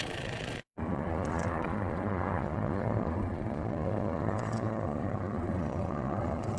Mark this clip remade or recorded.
remade